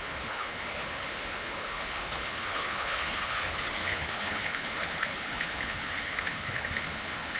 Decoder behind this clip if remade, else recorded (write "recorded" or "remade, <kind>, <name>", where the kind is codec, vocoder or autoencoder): remade, codec, HILCodec